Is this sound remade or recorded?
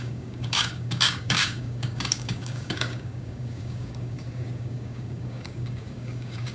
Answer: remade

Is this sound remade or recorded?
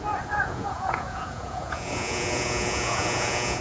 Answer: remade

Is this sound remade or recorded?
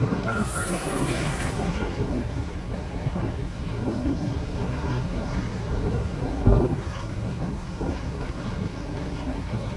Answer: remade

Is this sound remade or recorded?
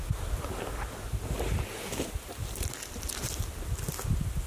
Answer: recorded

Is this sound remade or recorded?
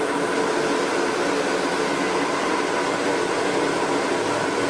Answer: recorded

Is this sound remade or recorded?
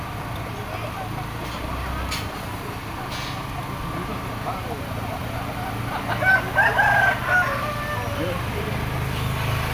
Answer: recorded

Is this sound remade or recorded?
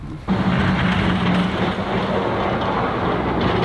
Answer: recorded